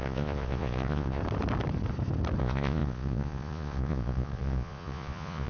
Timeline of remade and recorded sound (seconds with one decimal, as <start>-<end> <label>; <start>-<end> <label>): 0.0-1.2 remade; 1.2-2.4 recorded; 2.4-5.5 remade